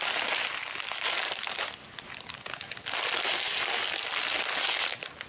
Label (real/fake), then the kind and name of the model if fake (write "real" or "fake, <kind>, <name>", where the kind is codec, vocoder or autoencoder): real